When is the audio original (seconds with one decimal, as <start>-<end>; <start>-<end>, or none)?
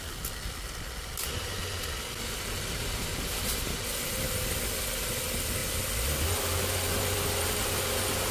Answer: 0.0-8.3